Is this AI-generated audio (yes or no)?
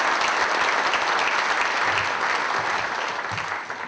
no